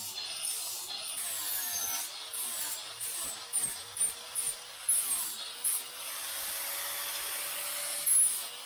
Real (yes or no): yes